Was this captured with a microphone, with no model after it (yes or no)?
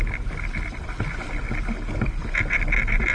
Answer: yes